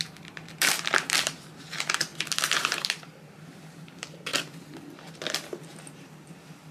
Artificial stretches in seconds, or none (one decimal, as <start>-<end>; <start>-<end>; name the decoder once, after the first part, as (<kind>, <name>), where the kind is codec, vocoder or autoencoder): 0.0-2.1 (vocoder, BigVGAN v2); 2.6-4.3; 5.9-6.7